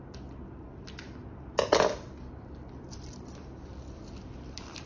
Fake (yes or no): no